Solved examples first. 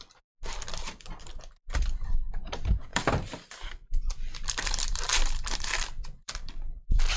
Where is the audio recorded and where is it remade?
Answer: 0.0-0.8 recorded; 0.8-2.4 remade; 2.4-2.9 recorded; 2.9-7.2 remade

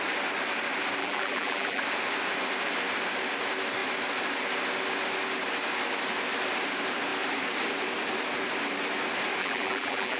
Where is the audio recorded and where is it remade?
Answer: 0.0-1.0 recorded; 1.0-1.8 remade; 1.8-9.4 recorded; 9.4-10.2 remade

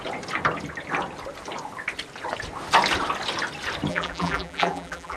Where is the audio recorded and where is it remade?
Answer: 0.0-3.9 recorded; 3.9-5.2 remade